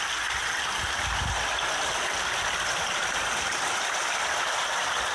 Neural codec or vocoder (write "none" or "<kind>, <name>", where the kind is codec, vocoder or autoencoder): none